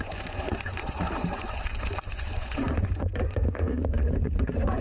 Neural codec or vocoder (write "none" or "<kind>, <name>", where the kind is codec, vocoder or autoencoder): vocoder, Vocos